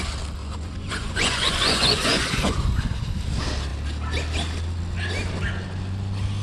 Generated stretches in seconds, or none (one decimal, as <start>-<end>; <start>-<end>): 0.4-3.0